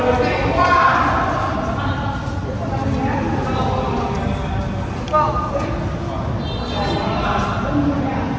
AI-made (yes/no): no